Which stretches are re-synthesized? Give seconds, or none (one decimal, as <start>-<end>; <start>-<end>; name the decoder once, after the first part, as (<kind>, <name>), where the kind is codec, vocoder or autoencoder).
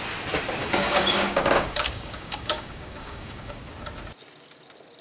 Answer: 0.6-3.6 (codec, DAC)